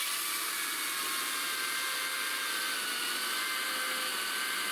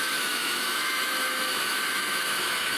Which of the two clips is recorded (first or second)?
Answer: first